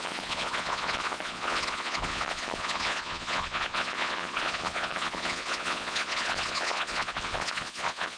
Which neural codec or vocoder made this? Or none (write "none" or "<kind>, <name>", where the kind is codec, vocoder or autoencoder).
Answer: vocoder, Vocos